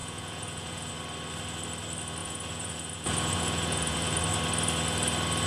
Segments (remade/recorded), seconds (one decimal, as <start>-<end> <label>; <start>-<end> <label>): 0.0-0.9 remade; 0.9-2.2 recorded; 2.2-4.2 remade; 4.2-5.5 recorded